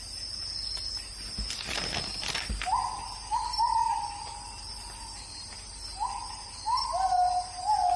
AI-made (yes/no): no